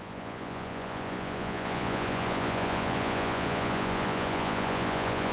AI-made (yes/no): yes